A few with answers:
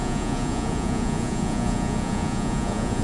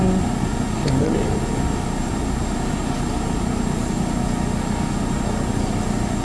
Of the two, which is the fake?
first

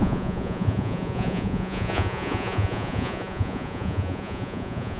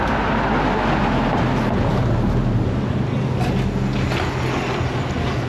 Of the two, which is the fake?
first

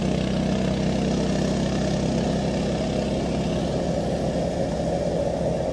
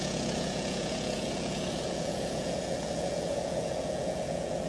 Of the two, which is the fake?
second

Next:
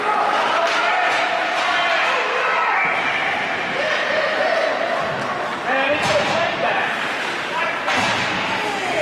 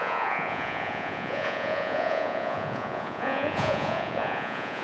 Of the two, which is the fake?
second